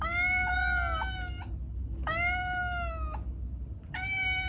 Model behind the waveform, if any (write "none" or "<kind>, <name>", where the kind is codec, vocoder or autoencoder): none